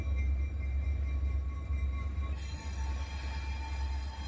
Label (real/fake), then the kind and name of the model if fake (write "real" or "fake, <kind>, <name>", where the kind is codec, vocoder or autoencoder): real